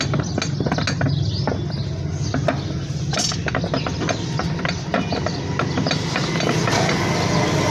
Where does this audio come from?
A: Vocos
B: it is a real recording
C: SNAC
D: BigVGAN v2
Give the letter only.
B